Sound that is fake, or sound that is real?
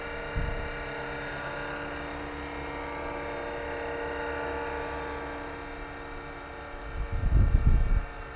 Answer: real